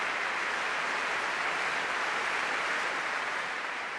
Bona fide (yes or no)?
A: no